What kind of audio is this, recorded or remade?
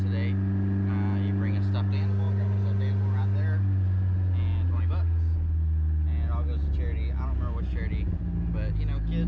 recorded